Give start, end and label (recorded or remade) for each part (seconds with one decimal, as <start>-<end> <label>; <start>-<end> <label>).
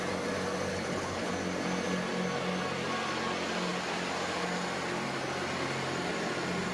0.0-0.7 recorded; 0.7-1.3 remade; 1.3-6.7 recorded